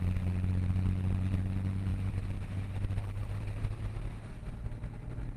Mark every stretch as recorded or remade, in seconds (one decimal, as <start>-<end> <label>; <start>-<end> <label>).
0.0-1.9 recorded; 1.9-4.3 remade; 4.3-5.4 recorded